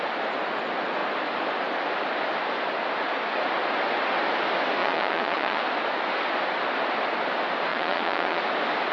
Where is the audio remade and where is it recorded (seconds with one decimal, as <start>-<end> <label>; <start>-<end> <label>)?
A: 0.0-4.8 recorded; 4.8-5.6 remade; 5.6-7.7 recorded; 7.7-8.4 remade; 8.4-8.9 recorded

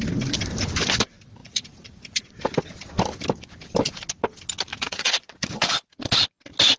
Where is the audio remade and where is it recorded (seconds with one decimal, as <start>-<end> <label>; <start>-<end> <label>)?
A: 0.0-1.4 recorded; 1.4-2.3 remade; 2.3-4.7 recorded; 4.7-5.9 remade; 5.9-6.8 recorded

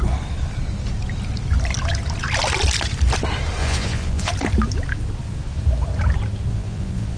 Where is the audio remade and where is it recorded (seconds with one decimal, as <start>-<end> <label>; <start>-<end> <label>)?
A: 0.0-3.6 recorded; 3.6-4.3 remade; 4.3-6.5 recorded; 6.5-7.2 remade

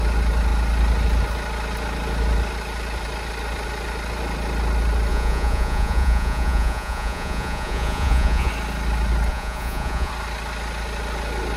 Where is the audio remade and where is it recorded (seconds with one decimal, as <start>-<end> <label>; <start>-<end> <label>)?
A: 0.0-5.1 recorded; 5.1-8.5 remade; 8.5-9.3 recorded; 9.3-10.1 remade; 10.1-11.6 recorded